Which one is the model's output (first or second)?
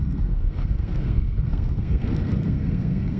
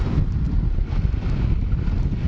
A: first